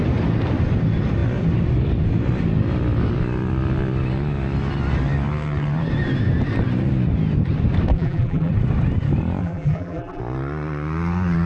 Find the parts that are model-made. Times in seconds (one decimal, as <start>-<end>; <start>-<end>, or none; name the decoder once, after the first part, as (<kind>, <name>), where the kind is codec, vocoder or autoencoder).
7.9-8.5 (vocoder, BigVGAN v2); 9.4-10.2